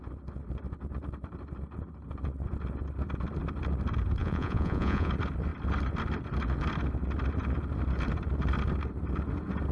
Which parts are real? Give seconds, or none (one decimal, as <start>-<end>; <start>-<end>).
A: 0.0-4.2; 5.1-9.7